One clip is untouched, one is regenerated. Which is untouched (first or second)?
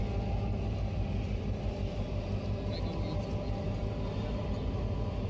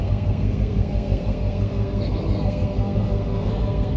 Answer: first